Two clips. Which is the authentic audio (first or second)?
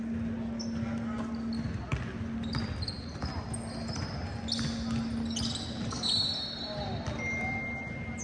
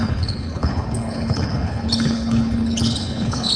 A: first